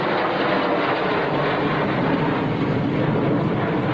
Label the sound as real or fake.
real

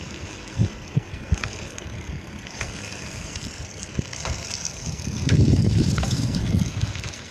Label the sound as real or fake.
fake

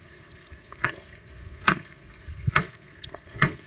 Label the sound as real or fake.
fake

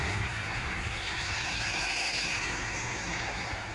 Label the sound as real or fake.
fake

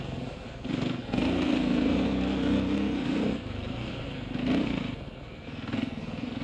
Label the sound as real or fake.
fake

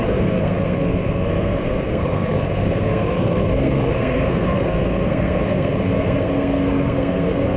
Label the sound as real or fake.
fake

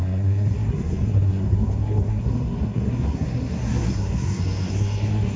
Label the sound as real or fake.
fake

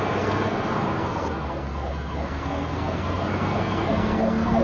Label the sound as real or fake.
fake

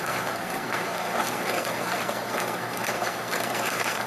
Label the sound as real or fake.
fake